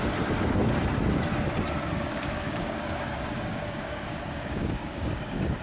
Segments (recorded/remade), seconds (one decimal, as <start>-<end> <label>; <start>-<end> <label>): 0.0-2.1 recorded; 2.1-5.6 remade